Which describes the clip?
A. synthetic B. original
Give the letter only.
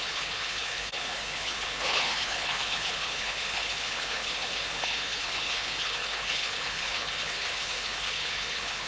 A